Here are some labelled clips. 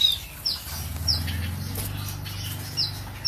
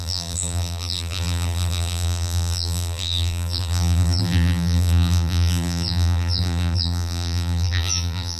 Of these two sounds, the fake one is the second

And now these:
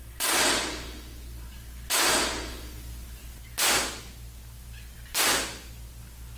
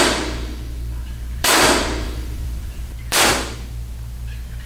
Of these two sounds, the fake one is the second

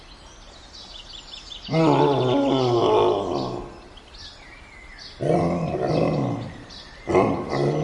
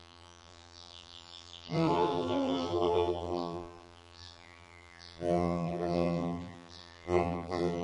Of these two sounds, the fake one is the second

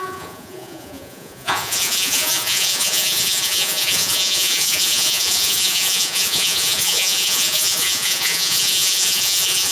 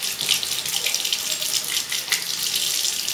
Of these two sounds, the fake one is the first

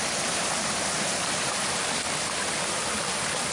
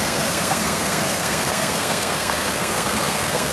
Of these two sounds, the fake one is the second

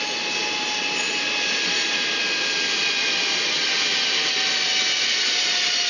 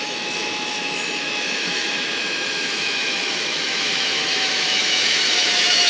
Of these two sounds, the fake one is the second